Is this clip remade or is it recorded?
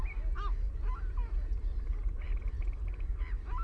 recorded